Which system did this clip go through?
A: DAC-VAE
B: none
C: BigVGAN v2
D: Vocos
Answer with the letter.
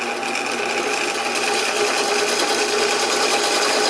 B